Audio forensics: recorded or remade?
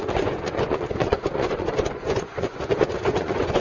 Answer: remade